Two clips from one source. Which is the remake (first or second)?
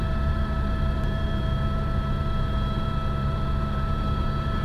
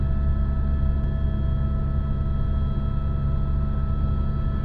first